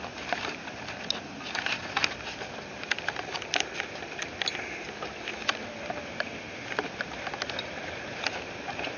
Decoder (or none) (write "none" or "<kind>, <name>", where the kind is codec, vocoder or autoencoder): none